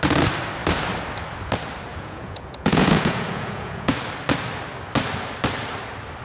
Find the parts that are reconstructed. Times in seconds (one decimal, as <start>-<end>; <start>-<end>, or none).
1.9-3.9